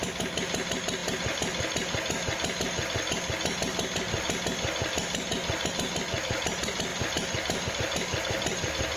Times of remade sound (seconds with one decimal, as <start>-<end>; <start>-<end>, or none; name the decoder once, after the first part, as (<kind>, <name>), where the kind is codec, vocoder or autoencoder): none